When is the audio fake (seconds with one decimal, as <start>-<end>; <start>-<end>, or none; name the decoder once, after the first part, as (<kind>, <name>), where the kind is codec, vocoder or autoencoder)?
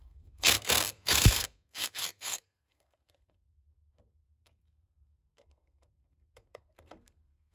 0.0-7.5 (codec, SNAC)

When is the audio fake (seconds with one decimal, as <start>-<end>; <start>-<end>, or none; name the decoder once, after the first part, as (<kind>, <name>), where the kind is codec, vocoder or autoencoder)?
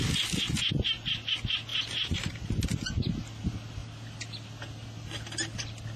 none